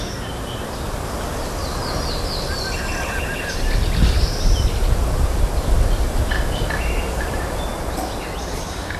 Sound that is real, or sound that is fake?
real